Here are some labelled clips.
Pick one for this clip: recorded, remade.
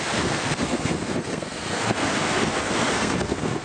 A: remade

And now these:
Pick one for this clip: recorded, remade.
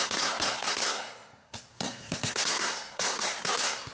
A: remade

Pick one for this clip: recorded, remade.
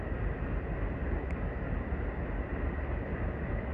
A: recorded